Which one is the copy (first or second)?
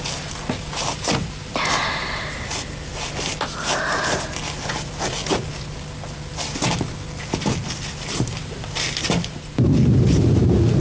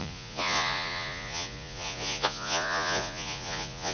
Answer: second